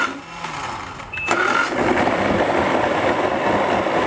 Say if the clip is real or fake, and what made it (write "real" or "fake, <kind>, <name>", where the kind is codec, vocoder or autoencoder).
real